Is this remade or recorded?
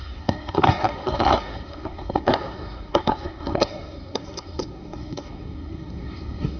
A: remade